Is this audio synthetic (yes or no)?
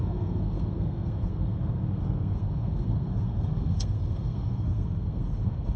yes